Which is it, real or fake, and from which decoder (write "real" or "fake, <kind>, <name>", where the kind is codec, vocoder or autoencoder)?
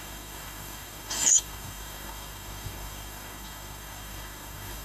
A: fake, codec, DAC